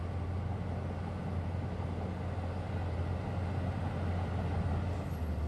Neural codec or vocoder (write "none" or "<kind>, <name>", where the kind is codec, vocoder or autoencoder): none